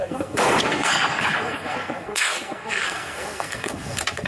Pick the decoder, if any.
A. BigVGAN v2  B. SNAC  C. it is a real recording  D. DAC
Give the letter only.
B